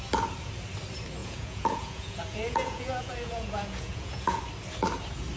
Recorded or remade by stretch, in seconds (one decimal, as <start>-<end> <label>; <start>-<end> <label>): 0.0-1.2 recorded; 1.2-4.4 remade; 4.4-5.4 recorded